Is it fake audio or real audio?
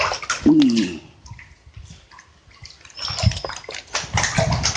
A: real